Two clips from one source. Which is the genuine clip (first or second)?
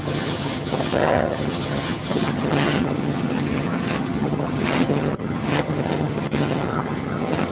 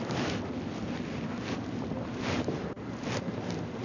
second